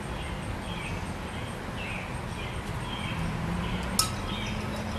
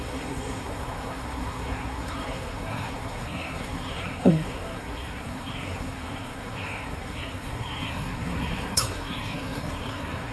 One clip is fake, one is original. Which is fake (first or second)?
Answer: second